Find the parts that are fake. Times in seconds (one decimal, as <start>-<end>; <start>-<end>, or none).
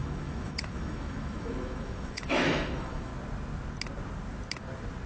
0.0-3.1